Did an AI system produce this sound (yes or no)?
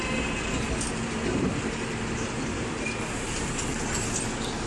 no